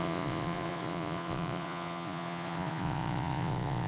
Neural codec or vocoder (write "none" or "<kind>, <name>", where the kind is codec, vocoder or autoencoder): vocoder, Vocos